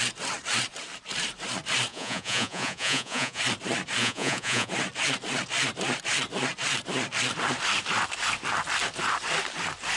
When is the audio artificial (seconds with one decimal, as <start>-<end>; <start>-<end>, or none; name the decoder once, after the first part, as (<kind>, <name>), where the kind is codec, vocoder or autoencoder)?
1.9-3.4 (vocoder, Vocos); 4.0-4.7